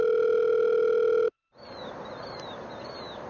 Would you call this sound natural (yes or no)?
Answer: yes